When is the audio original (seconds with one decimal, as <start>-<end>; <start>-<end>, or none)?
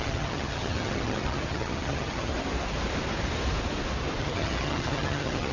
2.3-4.2